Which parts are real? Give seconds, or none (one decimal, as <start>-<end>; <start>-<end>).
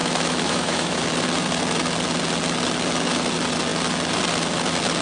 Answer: 1.0-5.0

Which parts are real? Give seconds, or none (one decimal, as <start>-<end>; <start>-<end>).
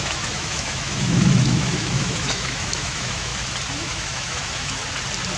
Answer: 3.3-3.8; 4.8-5.4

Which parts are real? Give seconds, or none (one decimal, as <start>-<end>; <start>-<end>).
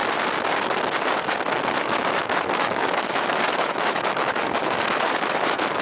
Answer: 0.0-1.8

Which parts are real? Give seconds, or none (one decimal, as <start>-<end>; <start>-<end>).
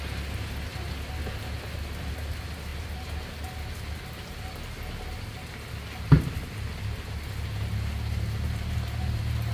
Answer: 0.0-9.5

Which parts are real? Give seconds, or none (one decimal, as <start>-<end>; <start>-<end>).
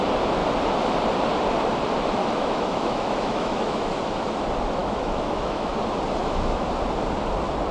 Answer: 0.0-2.2; 4.0-4.8; 5.7-6.2; 6.7-7.7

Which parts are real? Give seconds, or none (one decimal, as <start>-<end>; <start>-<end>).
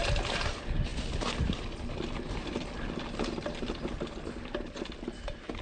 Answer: 0.0-5.6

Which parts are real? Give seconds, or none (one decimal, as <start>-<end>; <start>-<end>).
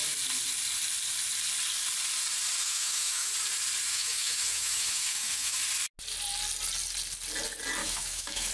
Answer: 0.0-2.6; 3.3-3.9; 5.6-7.8